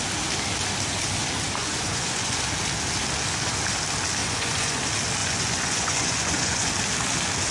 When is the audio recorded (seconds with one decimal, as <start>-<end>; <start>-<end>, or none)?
0.0-1.6; 2.4-4.2; 4.8-5.2; 6.7-7.5